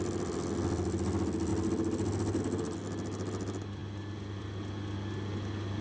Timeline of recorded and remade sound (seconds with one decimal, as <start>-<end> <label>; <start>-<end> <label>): 0.0-5.8 recorded